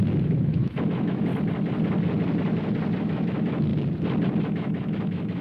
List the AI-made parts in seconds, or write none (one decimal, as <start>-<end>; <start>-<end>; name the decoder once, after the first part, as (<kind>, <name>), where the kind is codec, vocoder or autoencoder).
0.0-1.3 (autoencoder, DAC-VAE); 3.0-3.7; 4.4-5.4

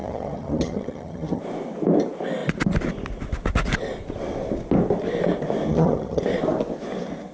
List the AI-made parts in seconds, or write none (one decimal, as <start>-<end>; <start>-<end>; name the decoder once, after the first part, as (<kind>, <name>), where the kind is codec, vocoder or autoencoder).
0.0-1.4 (vocoder, HiFi-GAN); 5.7-6.2

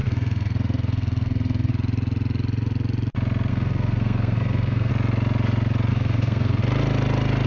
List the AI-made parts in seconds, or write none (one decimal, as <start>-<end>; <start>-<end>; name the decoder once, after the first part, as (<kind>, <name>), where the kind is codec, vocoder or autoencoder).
0.0-1.7 (codec, SNAC); 3.5-4.9; 5.9-6.6

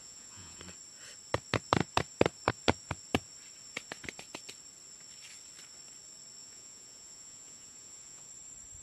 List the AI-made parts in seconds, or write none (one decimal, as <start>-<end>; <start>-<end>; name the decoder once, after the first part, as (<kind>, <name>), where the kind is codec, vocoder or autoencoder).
0.0-0.6 (vocoder, Vocos); 6.4-8.3